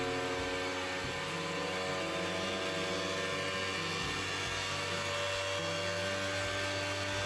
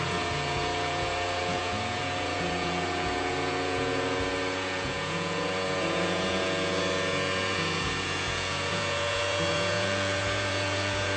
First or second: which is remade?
second